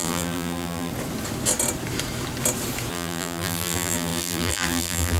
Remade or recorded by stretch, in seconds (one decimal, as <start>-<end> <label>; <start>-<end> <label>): 0.0-0.9 remade; 0.9-2.9 recorded; 2.9-5.2 remade